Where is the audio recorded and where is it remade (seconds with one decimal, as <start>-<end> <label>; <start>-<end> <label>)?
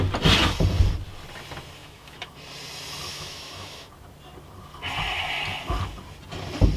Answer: 0.0-1.8 recorded; 1.8-2.3 remade; 2.3-3.1 recorded; 3.1-3.9 remade; 3.9-6.8 recorded